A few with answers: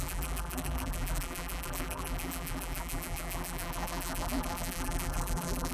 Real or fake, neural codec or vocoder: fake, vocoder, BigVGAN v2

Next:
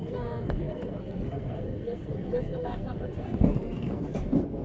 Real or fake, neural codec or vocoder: fake, codec, SNAC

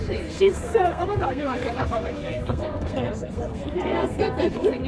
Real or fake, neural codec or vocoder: fake, codec, SNAC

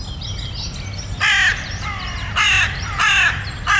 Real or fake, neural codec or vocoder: real